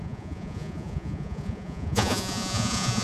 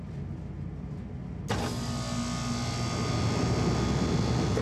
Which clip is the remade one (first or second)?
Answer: first